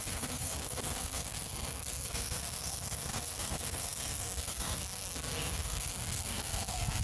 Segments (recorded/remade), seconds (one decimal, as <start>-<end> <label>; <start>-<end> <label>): 0.0-7.0 remade